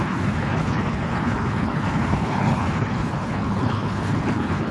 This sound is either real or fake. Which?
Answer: fake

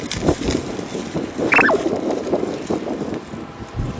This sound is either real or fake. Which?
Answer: real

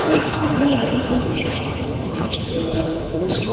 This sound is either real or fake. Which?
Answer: fake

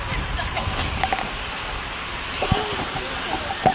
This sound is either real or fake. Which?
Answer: real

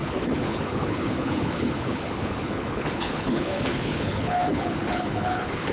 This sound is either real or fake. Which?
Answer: fake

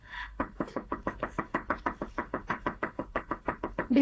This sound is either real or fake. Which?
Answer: fake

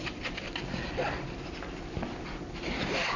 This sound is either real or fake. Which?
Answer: real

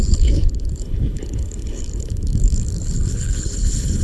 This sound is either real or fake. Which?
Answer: fake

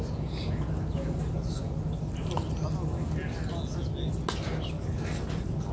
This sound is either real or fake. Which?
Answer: real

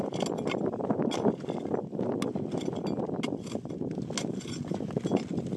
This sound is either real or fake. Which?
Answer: real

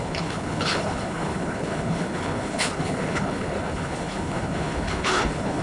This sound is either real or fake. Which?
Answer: fake